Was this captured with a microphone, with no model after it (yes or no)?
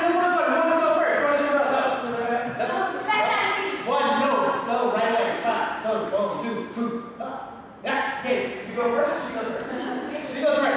yes